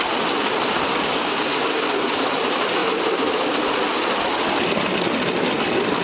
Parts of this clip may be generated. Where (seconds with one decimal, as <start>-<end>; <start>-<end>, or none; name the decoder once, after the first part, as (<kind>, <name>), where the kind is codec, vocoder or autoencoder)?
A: 0.9-1.4 (codec, DAC)